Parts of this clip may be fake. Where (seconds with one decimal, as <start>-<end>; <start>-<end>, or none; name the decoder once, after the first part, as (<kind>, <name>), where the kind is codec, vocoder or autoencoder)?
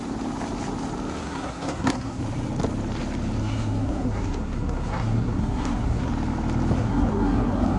1.2-2.2 (codec, SNAC); 3.4-6.1; 6.8-7.8